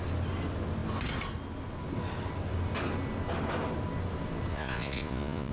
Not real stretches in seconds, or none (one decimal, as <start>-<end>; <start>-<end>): 4.5-5.5